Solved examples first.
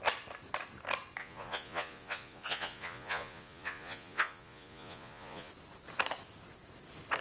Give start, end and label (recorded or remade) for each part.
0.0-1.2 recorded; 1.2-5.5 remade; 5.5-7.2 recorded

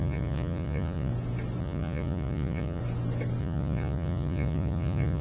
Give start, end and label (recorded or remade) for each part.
0.0-1.1 remade; 1.1-1.6 recorded; 1.6-2.8 remade; 2.8-3.4 recorded; 3.4-5.2 remade